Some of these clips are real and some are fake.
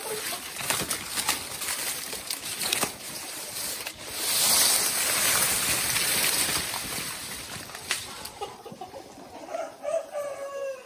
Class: real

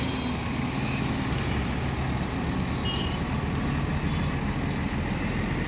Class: real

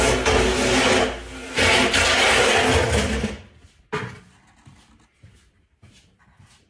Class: real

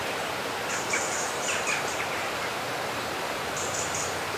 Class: fake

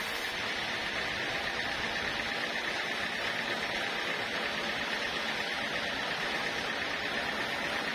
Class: real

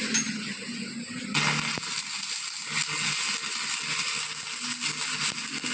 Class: real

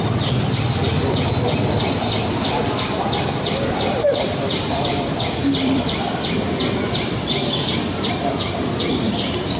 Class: fake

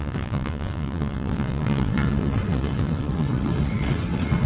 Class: fake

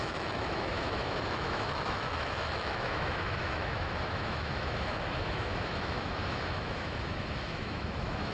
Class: fake